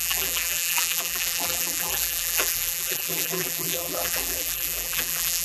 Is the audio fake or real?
fake